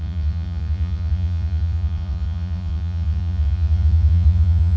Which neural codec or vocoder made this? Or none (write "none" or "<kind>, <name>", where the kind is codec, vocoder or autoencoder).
vocoder, Vocos